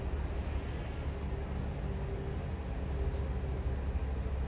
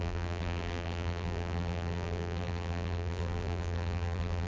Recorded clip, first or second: first